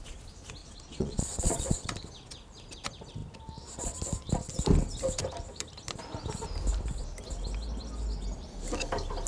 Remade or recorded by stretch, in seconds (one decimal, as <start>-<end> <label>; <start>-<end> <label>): 0.0-0.6 recorded; 0.6-1.9 remade; 1.9-9.3 recorded